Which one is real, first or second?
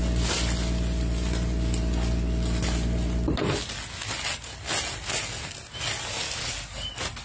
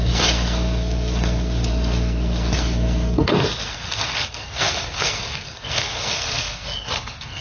first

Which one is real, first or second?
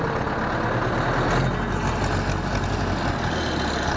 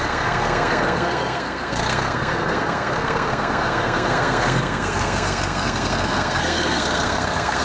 first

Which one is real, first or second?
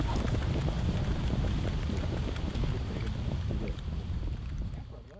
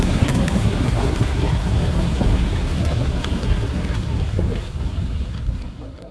first